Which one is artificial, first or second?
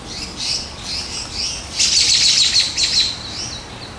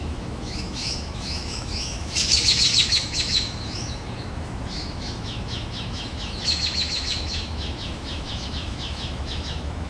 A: second